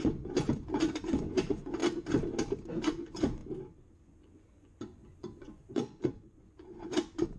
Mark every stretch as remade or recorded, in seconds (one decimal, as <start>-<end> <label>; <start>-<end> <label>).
0.0-1.8 remade; 1.8-2.7 recorded; 2.7-3.4 remade; 3.4-4.0 recorded; 4.0-7.4 remade